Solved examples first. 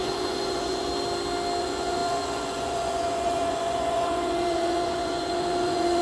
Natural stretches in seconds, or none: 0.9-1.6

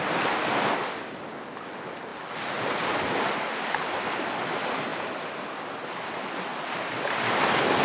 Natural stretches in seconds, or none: 0.0-7.8

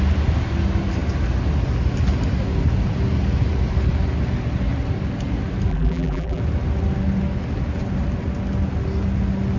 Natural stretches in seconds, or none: 0.0-5.7; 6.4-9.6

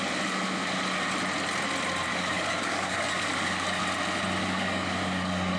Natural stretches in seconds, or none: 0.0-2.1; 3.8-4.4

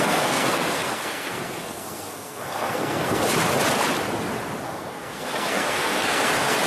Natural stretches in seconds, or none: 3.2-4.6

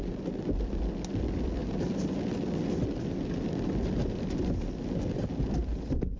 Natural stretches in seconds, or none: 0.0-6.2

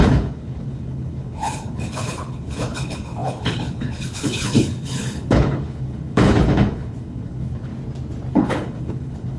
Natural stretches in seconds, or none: 7.7-8.3

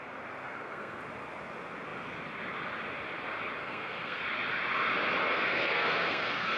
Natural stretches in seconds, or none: 0.0-0.4; 1.0-3.6; 4.2-5.3